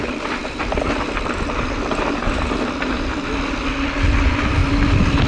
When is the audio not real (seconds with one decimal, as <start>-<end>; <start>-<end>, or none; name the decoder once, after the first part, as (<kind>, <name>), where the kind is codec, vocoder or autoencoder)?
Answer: none